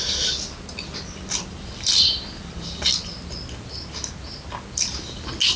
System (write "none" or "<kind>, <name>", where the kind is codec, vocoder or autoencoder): none